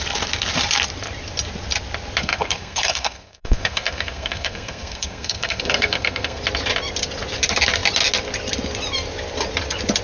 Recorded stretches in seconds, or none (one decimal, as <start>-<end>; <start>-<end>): 0.0-2.2; 6.4-10.0